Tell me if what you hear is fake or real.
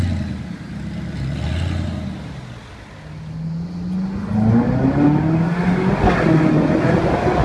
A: real